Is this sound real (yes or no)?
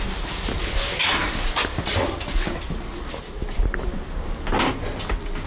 yes